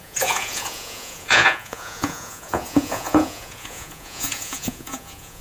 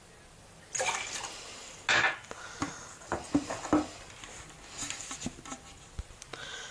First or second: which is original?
second